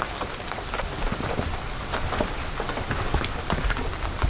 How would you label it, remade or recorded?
recorded